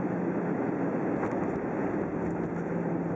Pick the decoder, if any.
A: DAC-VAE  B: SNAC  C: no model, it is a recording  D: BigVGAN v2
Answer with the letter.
C